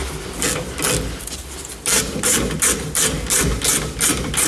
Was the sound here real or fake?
real